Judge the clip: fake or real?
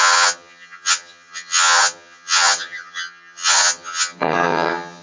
fake